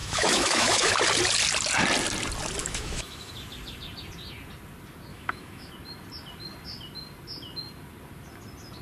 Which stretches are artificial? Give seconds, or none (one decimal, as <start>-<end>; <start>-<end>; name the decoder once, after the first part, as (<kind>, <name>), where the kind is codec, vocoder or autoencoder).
0.0-0.9 (autoencoder, DAC-VAE); 2.6-3.3; 5.1-5.7